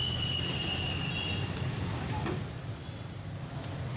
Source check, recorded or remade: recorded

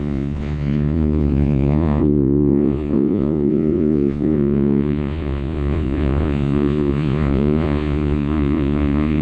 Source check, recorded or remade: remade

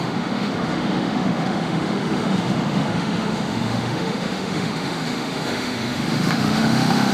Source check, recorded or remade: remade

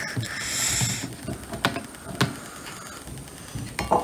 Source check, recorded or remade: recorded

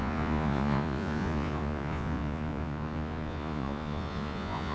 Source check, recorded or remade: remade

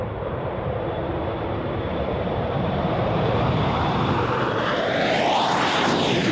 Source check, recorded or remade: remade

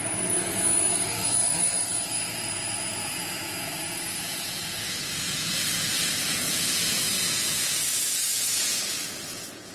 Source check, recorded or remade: remade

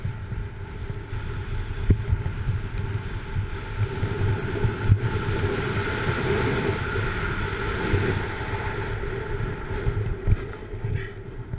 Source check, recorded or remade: recorded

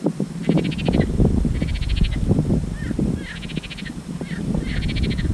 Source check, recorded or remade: recorded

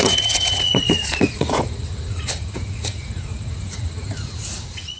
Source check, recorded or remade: remade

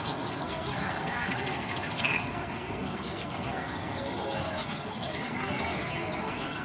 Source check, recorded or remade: remade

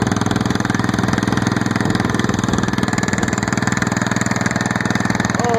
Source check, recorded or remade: recorded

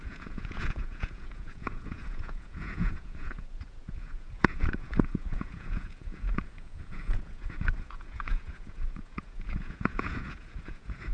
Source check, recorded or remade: remade